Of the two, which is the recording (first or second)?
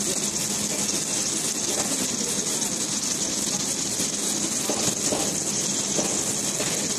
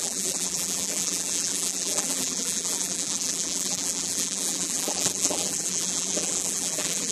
first